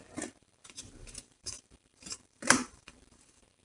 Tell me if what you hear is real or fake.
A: fake